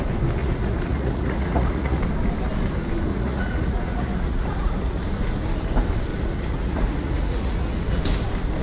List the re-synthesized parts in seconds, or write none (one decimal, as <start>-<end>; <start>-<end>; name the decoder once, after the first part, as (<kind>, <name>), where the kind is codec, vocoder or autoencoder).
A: 0.4-2.0 (vocoder, Vocos); 3.1-5.0; 6.1-8.0